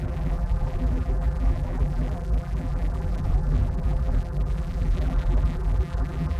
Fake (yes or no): yes